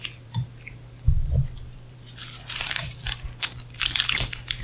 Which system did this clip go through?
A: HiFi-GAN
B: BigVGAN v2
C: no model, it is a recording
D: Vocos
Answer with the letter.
B